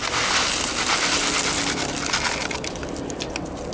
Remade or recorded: recorded